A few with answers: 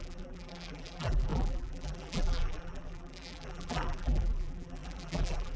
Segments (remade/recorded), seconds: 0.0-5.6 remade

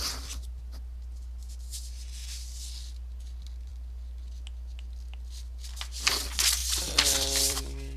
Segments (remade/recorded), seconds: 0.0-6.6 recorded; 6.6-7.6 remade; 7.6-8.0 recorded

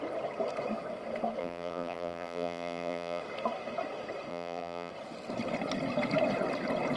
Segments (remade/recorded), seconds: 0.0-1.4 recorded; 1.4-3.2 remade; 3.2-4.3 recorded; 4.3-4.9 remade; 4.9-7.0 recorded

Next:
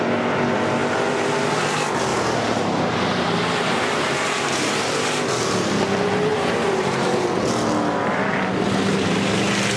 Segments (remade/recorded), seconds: 0.0-2.1 recorded; 2.1-4.7 remade; 4.7-6.3 recorded; 6.3-7.3 remade; 7.3-9.8 recorded